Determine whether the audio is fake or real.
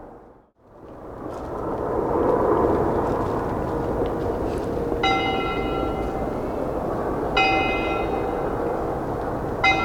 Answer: real